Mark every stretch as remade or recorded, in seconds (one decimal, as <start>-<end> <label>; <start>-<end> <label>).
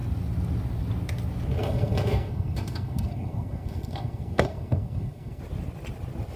0.0-1.6 recorded; 1.6-5.4 remade; 5.4-6.4 recorded